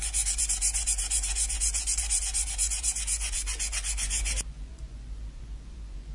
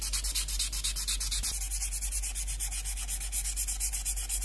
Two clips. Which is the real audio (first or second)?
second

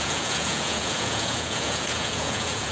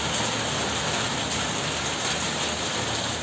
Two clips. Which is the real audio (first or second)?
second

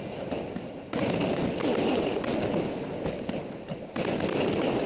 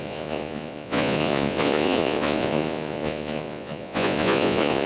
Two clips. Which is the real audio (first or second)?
first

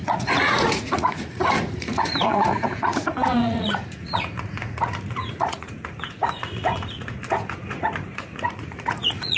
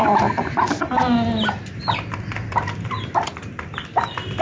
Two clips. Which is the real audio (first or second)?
second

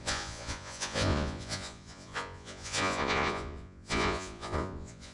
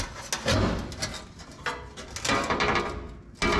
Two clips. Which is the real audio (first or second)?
second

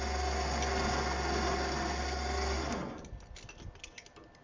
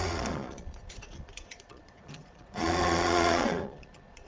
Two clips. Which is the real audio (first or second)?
first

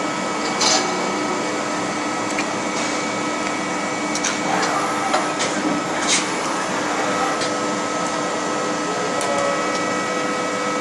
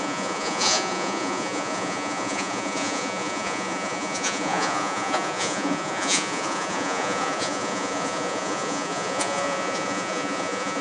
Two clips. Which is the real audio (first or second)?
first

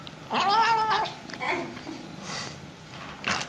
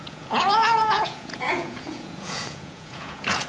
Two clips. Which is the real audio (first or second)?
first